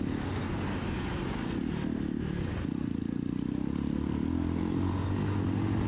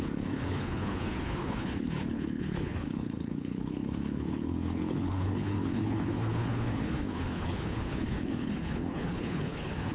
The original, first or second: first